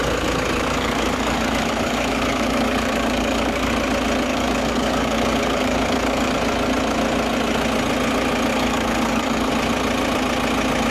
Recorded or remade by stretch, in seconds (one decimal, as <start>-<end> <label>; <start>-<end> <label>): 0.0-3.7 remade; 3.7-4.3 recorded; 4.3-6.3 remade; 6.3-8.5 recorded; 8.5-9.5 remade; 9.5-10.9 recorded